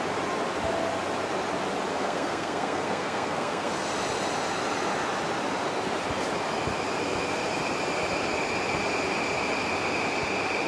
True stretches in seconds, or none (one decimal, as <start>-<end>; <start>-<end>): 0.0-1.9; 3.7-10.7

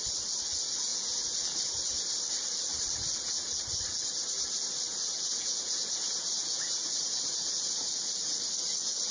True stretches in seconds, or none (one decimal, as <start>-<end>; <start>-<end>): 0.0-0.9; 2.2-5.1; 7.9-9.1